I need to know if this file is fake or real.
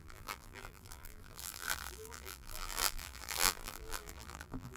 fake